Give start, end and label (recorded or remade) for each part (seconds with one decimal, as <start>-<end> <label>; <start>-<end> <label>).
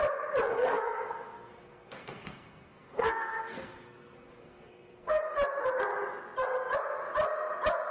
0.0-0.5 recorded; 0.5-5.2 remade; 5.2-7.9 recorded